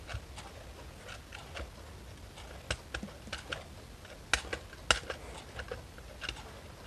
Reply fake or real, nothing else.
real